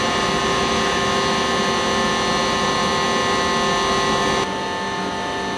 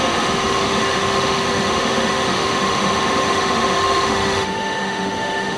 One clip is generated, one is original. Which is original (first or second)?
first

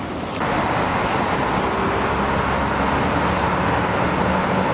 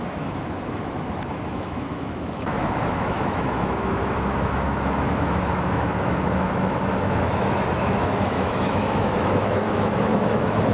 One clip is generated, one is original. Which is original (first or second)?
first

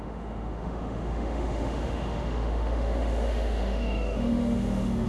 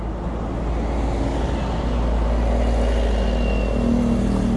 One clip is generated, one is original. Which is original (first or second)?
second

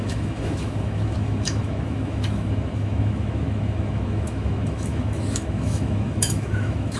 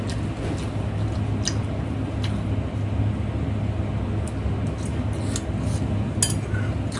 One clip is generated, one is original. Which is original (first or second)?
second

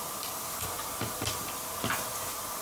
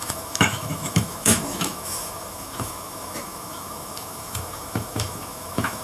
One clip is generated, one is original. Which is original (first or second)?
first